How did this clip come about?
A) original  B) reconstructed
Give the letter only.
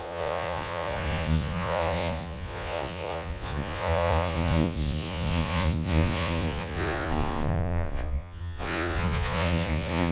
B